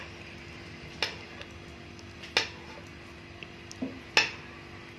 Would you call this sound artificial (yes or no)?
no